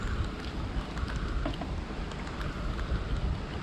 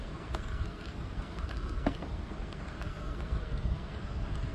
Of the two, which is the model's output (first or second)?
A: second